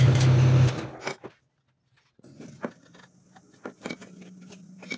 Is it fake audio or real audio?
real